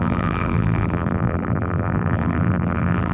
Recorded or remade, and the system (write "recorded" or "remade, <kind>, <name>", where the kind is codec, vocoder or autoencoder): remade, vocoder, BigVGAN v2